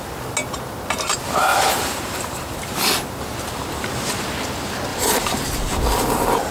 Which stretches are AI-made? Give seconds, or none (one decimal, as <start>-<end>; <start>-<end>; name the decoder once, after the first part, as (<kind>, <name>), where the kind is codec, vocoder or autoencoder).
1.5-2.8 (vocoder, BigVGAN v2); 4.9-5.8